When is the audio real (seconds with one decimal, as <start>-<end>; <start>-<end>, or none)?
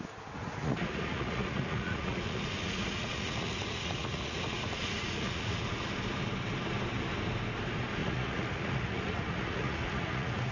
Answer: 0.0-0.6; 5.8-8.0